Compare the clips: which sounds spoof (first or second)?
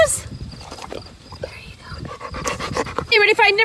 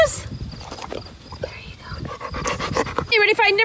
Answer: first